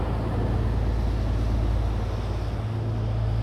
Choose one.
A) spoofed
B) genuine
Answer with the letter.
B